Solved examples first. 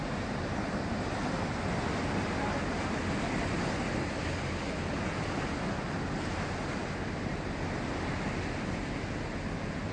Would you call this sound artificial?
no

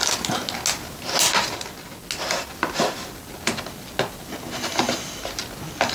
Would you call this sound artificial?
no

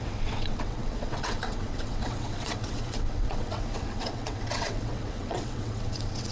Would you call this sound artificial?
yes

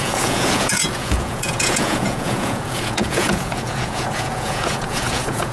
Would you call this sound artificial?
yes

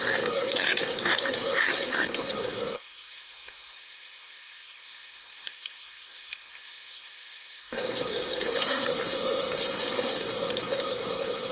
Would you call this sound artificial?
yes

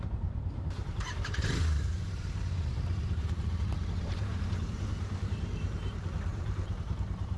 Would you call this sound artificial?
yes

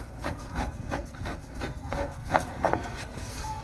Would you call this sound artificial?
yes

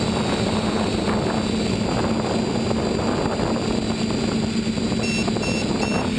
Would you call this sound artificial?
no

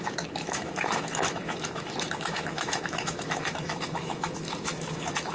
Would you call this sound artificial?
yes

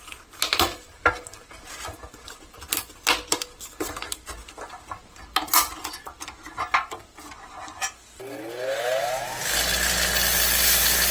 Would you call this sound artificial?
no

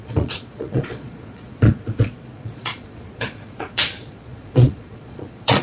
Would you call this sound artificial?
yes